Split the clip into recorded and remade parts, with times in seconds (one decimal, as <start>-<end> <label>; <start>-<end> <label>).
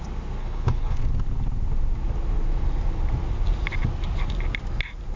0.0-0.4 recorded; 0.4-1.0 remade; 1.0-5.2 recorded